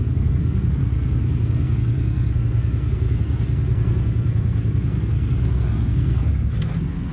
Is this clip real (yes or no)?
no